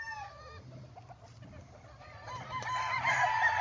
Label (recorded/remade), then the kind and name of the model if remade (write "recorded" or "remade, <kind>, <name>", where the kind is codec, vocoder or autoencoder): recorded